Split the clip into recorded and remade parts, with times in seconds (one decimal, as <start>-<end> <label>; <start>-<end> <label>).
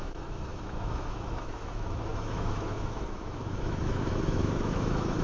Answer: 0.0-5.2 remade